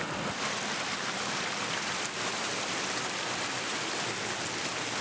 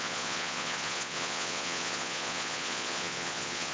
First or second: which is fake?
second